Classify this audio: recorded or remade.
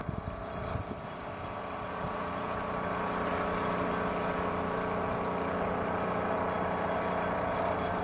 recorded